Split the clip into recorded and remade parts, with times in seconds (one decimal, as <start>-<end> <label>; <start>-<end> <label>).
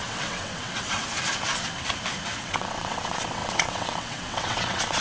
0.0-1.0 remade; 1.0-2.4 recorded; 2.4-5.0 remade